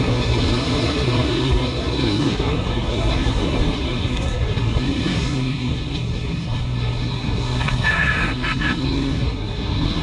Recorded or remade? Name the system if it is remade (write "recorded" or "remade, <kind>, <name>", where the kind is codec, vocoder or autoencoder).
remade, codec, SNAC